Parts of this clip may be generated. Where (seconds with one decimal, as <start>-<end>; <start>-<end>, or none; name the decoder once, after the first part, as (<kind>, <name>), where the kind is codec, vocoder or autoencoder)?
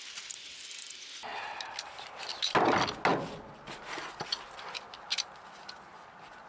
none